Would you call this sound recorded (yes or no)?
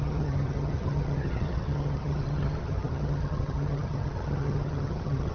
no